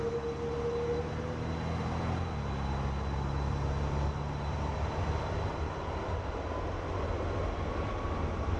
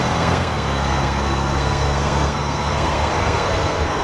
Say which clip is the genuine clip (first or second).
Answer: first